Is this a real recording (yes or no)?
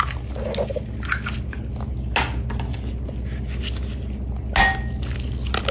yes